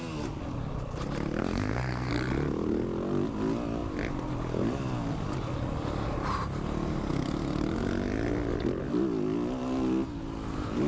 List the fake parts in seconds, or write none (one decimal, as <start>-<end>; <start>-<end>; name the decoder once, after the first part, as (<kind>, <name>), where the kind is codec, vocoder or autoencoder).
1.4-2.1 (codec, SNAC)